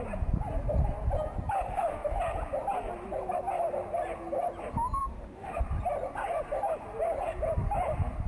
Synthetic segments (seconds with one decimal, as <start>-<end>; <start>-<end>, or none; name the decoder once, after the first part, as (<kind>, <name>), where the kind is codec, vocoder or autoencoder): 1.7-2.2 (autoencoder, DAC-VAE); 5.0-5.6

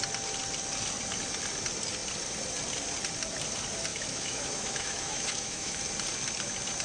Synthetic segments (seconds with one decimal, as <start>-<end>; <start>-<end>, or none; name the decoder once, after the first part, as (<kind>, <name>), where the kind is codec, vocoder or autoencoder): 3.9-5.8 (autoencoder, DAC-VAE)

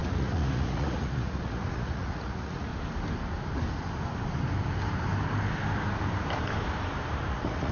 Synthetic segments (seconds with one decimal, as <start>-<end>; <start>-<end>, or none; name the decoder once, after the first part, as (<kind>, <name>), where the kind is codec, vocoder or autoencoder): 0.0-2.7 (vocoder, Vocos); 7.3-7.7